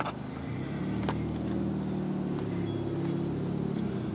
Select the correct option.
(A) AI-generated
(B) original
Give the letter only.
B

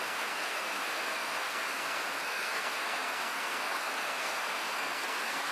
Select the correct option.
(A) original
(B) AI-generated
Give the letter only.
B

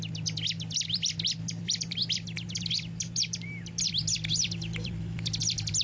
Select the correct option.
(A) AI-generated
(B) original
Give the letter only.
B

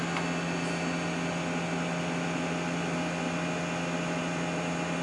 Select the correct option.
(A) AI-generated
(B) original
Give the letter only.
B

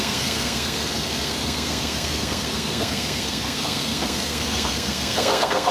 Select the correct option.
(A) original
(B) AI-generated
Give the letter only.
B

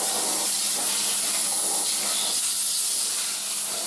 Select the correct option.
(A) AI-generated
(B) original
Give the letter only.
B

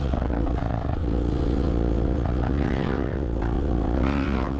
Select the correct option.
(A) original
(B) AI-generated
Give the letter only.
B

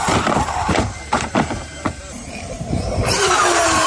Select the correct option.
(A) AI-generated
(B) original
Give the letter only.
A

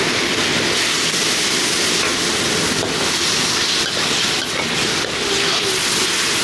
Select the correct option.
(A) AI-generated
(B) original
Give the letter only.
B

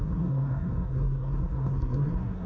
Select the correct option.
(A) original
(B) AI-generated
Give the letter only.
B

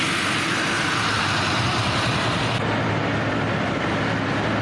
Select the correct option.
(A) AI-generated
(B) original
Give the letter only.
A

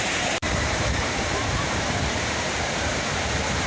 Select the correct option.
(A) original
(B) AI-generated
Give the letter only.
B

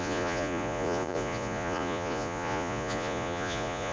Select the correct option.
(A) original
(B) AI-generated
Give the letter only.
B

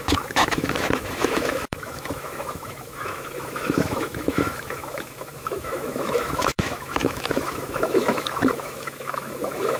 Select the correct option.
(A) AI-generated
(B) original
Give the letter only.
A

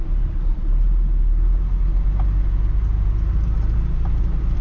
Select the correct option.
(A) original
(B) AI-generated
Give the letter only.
A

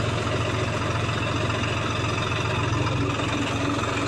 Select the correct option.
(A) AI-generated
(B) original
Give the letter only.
B